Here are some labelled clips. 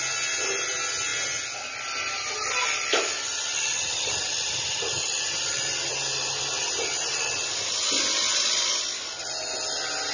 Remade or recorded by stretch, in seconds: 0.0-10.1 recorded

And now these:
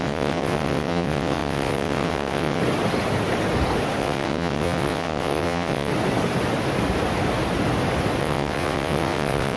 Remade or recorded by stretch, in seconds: 0.0-2.6 remade; 2.6-4.0 recorded; 4.0-5.9 remade; 5.9-8.2 recorded; 8.2-9.6 remade

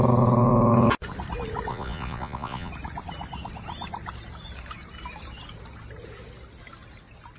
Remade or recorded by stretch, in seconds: 0.0-1.7 recorded; 1.7-2.7 remade; 2.7-7.4 recorded

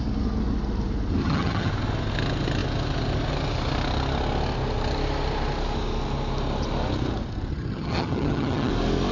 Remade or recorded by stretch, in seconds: 0.0-1.2 recorded; 1.2-1.7 remade; 1.7-7.5 recorded; 7.5-8.7 remade; 8.7-9.1 recorded

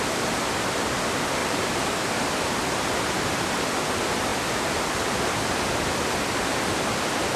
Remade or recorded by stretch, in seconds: 0.0-1.4 recorded; 1.4-2.6 remade; 2.6-7.4 recorded

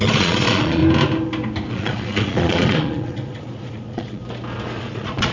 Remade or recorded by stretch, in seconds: 0.0-0.8 remade; 0.8-1.7 recorded; 1.7-4.2 remade; 4.2-4.8 recorded; 4.8-5.3 remade

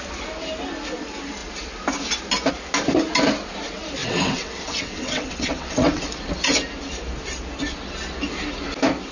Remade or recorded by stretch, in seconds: 0.0-4.0 recorded; 4.0-6.0 remade; 6.0-9.1 recorded